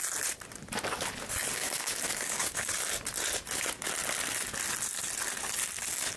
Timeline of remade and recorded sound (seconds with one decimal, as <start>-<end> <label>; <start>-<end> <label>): 0.0-1.6 recorded; 1.6-2.7 remade; 2.7-6.2 recorded